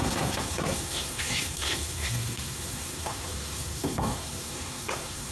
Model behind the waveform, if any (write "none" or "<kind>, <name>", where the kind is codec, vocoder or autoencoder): codec, SNAC